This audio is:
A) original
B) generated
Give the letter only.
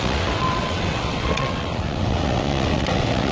B